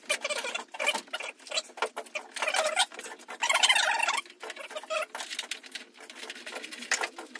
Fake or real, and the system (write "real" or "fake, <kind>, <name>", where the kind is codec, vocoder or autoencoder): real